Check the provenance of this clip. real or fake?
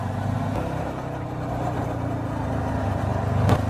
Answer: real